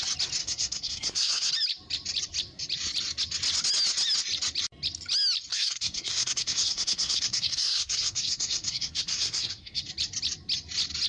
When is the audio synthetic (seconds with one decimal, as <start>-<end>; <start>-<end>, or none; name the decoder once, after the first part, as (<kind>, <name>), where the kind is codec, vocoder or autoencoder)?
0.4-1.5 (codec, SNAC); 5.5-9.9